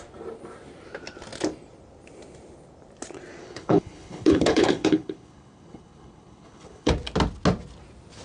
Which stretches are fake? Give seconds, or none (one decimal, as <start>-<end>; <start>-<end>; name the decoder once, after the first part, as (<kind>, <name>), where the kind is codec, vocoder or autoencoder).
3.4-6.9 (codec, HILCodec)